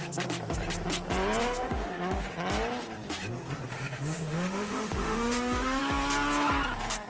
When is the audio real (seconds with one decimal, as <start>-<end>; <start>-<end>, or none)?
0.0-1.4; 2.3-3.7; 5.8-7.1